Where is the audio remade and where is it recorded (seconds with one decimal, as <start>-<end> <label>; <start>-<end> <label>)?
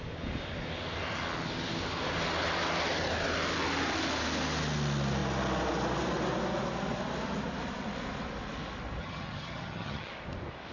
0.0-9.0 recorded; 9.0-10.1 remade; 10.1-10.7 recorded